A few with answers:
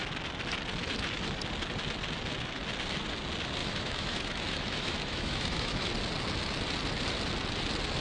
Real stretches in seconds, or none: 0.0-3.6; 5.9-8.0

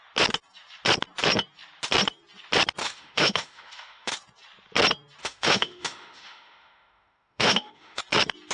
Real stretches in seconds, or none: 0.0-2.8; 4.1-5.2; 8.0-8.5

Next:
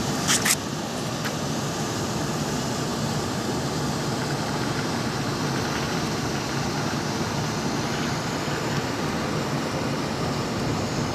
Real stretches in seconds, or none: 0.0-11.1

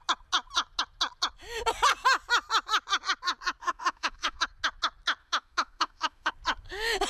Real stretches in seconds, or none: 0.0-3.6; 4.4-5.2; 6.3-7.1

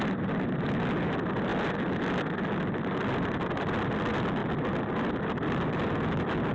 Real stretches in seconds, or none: 0.0-6.5

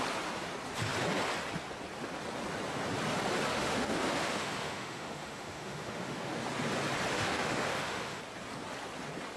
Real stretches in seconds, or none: 0.0-3.5; 6.3-7.1; 8.2-9.4